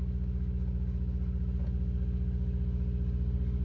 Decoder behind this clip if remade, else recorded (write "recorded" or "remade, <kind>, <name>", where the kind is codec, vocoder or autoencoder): recorded